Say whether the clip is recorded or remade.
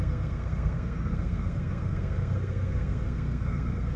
remade